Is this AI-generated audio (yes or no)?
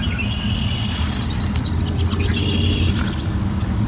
no